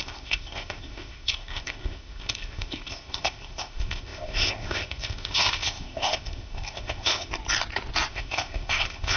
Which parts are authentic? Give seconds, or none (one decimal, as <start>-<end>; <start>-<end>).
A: 7.3-8.1